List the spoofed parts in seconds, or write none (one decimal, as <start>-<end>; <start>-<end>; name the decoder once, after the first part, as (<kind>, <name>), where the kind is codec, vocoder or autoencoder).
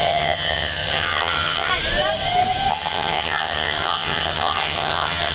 0.0-1.7 (vocoder, HiFi-GAN); 2.7-5.3